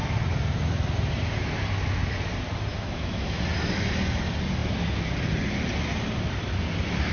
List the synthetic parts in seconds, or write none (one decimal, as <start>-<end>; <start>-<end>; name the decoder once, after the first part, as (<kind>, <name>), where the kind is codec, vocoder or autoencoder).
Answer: 2.7-3.4 (autoencoder, DAC-VAE)